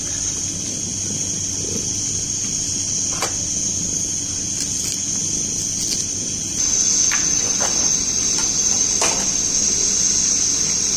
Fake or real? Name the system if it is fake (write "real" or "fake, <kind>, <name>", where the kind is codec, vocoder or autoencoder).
real